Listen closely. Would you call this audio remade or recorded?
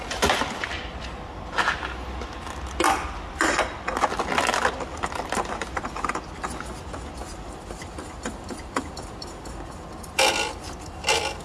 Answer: recorded